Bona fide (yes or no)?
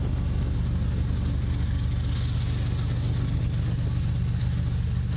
yes